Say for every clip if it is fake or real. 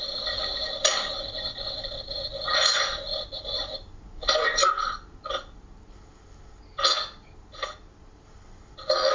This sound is real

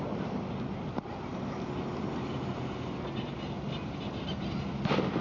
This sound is real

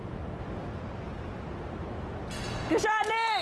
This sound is real